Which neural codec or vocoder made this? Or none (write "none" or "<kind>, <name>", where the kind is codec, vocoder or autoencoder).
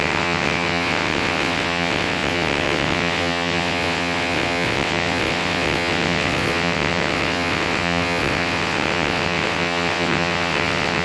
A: vocoder, WaveNeXt